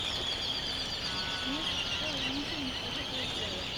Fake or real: real